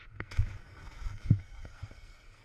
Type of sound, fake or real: fake